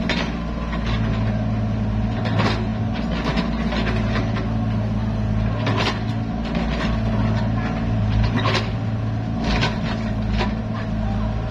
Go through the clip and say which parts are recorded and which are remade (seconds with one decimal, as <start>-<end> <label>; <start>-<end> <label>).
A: 0.0-11.5 recorded